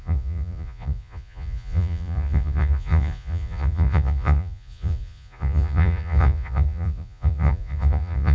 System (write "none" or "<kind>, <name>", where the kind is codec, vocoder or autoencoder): vocoder, Vocos